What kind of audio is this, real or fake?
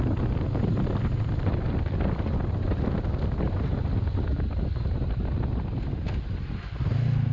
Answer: real